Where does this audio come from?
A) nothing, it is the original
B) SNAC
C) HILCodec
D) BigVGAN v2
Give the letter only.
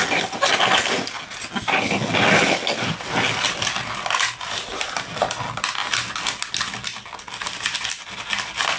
A